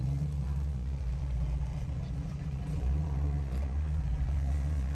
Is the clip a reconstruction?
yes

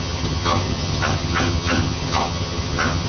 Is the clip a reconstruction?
yes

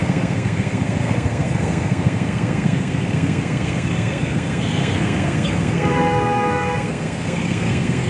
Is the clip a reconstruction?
yes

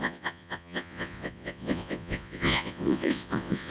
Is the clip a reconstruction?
yes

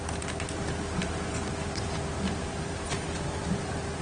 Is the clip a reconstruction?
no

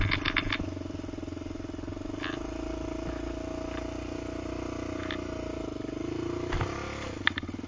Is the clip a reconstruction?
no